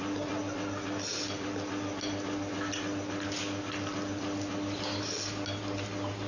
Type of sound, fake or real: real